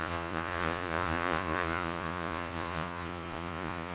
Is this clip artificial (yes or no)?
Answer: yes